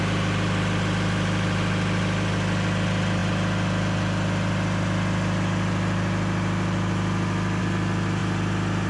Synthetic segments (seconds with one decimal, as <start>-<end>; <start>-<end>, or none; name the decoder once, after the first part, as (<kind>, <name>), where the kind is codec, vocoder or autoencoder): none